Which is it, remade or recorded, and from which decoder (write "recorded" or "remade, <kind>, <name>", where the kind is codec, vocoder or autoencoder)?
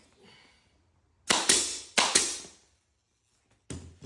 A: recorded